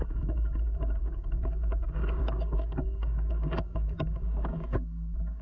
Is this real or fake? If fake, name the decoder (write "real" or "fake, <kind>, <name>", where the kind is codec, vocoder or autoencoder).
fake, codec, DAC